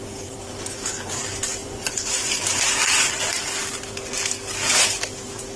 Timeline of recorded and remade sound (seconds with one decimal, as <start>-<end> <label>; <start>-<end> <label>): 0.0-1.6 recorded; 1.6-2.4 remade; 2.4-5.6 recorded